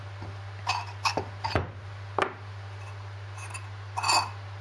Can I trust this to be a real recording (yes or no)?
yes